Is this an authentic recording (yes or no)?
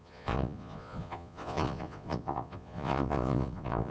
no